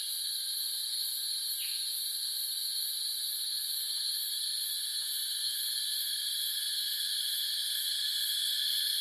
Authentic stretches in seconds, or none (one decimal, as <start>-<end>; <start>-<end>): 0.0-0.8; 2.0-4.9; 5.8-9.0